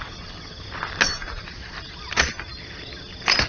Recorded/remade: recorded